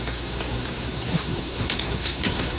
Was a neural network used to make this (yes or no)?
yes